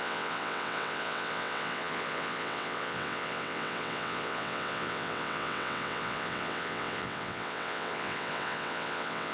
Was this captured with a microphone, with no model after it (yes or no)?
no